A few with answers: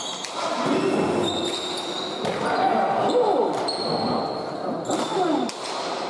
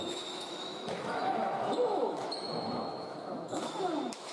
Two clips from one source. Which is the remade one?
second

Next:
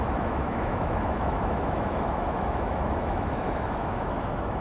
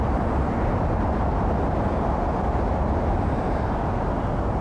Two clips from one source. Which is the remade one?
first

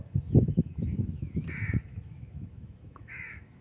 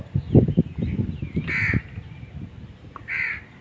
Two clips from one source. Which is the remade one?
first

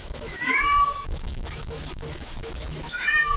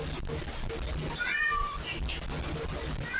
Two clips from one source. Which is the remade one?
first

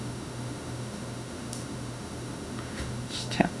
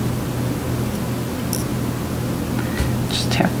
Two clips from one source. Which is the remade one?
first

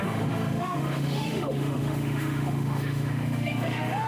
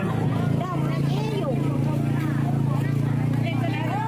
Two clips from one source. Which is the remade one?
first